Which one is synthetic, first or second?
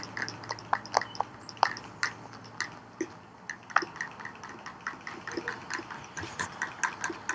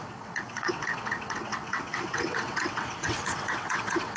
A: second